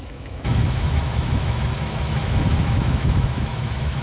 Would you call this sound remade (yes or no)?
yes